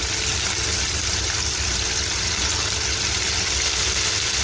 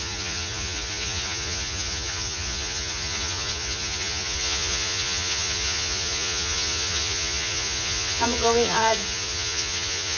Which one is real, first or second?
first